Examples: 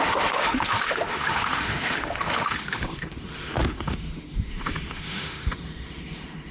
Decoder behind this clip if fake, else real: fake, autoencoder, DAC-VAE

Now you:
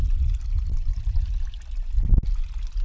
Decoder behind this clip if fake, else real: real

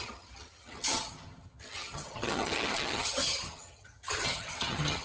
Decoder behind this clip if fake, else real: fake, vocoder, HiFi-GAN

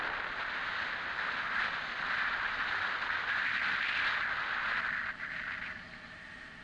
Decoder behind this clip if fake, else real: real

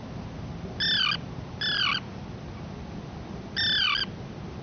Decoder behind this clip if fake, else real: real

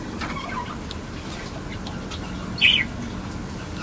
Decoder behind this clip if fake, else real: real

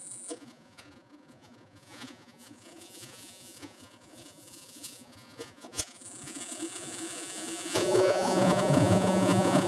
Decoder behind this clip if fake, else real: fake, vocoder, Vocos